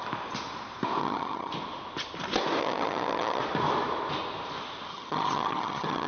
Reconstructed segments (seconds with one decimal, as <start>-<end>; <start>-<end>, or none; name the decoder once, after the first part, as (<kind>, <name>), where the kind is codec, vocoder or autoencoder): 1.0-1.5 (vocoder, HiFi-GAN); 2.6-3.4; 4.9-6.1